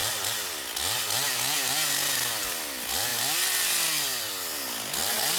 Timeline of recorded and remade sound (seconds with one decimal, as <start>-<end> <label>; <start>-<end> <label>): 0.0-5.4 recorded

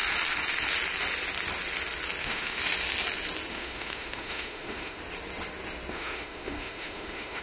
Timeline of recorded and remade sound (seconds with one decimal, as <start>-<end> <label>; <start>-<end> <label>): 0.0-2.2 recorded; 2.2-2.6 remade; 2.6-3.5 recorded; 3.5-5.0 remade; 5.0-5.9 recorded; 5.9-7.4 remade

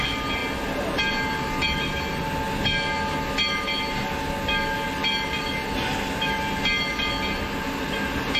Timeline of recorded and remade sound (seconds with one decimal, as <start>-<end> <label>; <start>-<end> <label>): 0.0-8.4 recorded

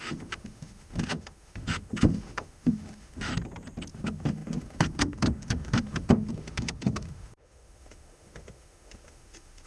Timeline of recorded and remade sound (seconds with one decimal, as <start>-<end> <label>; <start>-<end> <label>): 0.0-3.3 remade; 3.3-3.9 recorded; 3.9-9.7 remade